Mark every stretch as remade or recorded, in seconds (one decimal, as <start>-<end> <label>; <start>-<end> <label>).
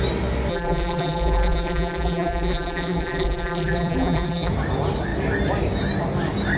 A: 0.0-0.5 recorded; 0.5-4.5 remade; 4.5-6.6 recorded